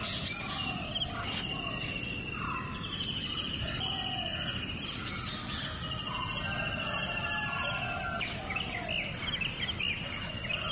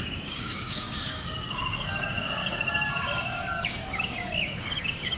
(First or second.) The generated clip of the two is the second